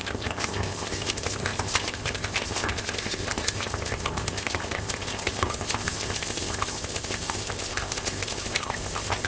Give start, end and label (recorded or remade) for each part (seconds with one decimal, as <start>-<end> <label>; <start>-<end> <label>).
0.0-9.3 remade